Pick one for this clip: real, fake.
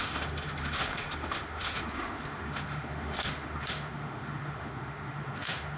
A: fake